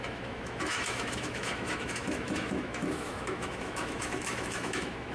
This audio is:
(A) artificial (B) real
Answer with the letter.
A